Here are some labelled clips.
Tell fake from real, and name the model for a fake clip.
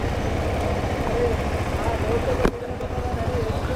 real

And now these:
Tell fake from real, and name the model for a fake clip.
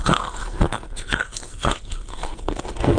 fake, codec, SNAC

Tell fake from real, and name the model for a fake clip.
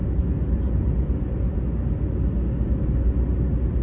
real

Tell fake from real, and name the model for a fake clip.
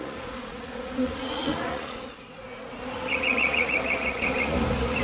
fake, vocoder, Vocos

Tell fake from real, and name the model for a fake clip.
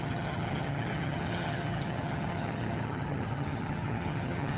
fake, vocoder, HiFi-GAN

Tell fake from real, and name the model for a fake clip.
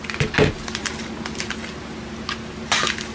real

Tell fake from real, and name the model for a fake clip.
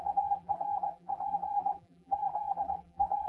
fake, vocoder, BigVGAN v2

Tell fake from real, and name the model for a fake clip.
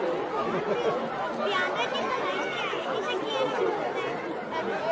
real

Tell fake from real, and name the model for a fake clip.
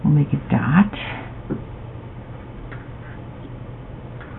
real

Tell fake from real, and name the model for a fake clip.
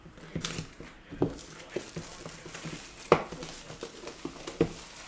real